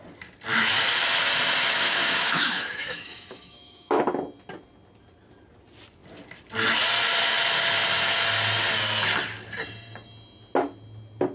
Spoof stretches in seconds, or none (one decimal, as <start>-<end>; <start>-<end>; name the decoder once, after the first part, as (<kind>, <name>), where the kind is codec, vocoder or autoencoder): 1.6-4.0 (autoencoder, DAC-VAE)